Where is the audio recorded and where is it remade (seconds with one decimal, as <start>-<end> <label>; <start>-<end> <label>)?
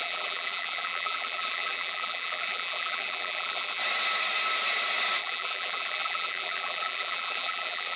0.0-3.8 remade; 3.8-5.2 recorded; 5.2-8.0 remade